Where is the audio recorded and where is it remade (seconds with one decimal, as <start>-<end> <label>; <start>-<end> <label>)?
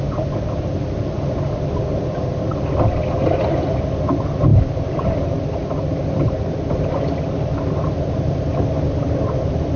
0.0-9.8 recorded